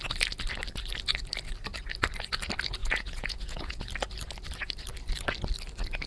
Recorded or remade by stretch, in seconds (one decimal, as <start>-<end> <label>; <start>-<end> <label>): 0.0-2.8 recorded; 2.8-3.8 remade; 3.8-6.1 recorded